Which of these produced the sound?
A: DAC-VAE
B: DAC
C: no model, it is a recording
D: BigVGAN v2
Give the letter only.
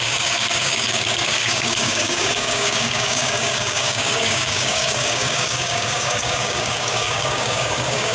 B